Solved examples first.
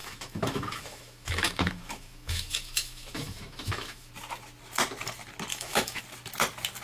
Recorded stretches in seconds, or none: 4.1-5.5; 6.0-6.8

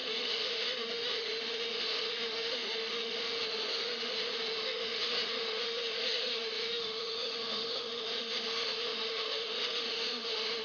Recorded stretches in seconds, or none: none